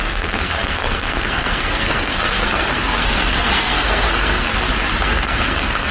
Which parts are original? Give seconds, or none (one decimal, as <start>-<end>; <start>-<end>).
4.5-5.0